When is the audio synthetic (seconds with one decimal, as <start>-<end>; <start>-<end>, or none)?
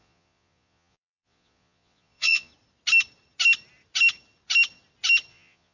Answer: 0.0-2.5; 5.3-5.7